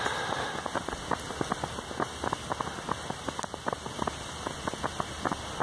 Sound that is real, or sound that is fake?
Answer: real